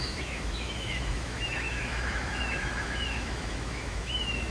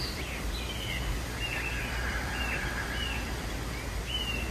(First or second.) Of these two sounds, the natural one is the second